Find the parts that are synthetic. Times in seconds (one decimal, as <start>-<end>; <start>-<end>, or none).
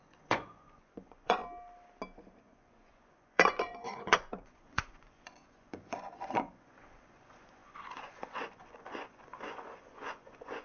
0.0-1.4; 2.4-10.6